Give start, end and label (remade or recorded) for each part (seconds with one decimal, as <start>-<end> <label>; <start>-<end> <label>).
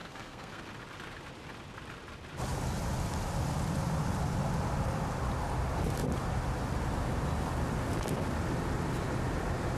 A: 0.0-0.6 remade; 0.6-9.8 recorded